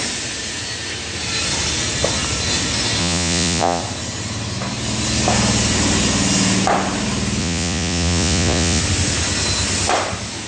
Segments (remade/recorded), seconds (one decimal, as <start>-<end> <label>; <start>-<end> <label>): 0.0-3.0 recorded; 3.0-3.8 remade; 3.8-7.4 recorded; 7.4-8.8 remade; 8.8-10.5 recorded